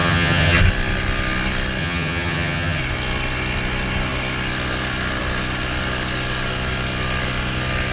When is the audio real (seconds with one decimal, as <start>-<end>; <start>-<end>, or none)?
0.6-1.8; 2.8-7.9